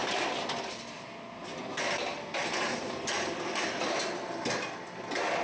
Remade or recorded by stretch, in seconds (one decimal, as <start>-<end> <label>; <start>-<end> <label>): 0.0-5.4 recorded